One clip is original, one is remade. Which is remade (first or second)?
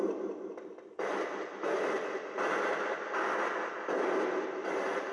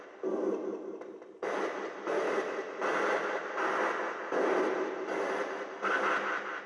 first